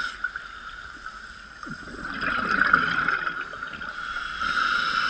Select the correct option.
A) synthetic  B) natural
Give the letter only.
B